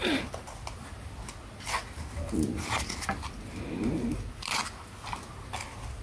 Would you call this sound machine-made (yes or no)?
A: no